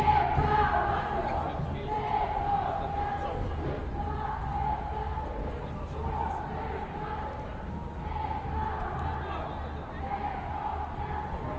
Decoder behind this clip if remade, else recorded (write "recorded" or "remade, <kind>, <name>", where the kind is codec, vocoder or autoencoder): recorded